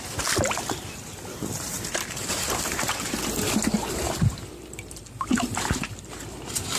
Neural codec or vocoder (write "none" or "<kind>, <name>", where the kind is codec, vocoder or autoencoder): vocoder, BigVGAN v2